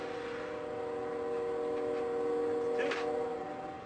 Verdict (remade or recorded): recorded